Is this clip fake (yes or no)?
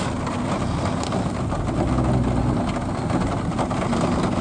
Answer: no